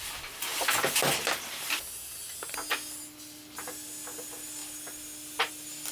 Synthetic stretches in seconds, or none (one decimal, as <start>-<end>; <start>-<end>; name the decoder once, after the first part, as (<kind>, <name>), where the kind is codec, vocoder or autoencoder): none